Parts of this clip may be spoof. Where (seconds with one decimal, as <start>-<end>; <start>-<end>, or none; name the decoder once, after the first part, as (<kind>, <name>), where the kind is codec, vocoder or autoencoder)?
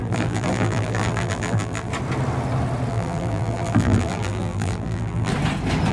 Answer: 0.0-1.9 (vocoder, BigVGAN v2); 2.9-5.3